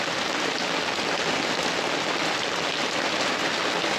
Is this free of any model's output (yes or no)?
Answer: yes